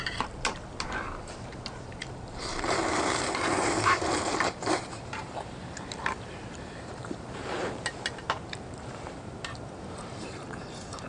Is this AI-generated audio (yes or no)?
yes